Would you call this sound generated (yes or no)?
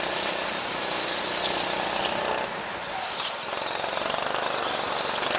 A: no